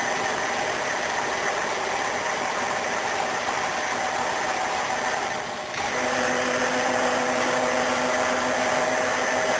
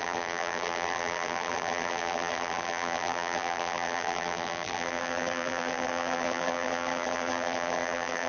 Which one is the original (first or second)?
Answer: first